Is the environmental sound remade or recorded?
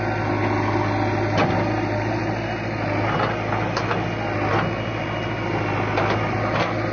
recorded